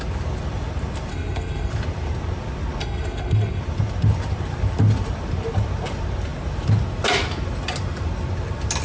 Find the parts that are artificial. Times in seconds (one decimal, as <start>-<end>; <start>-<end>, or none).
1.1-1.7; 2.8-3.6